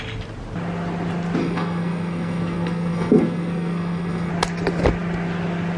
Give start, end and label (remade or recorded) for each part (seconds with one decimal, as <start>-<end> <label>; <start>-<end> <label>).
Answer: 0.0-1.4 recorded; 1.4-4.3 remade; 4.3-5.8 recorded